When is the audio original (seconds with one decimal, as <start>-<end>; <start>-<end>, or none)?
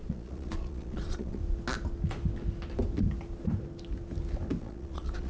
1.4-4.6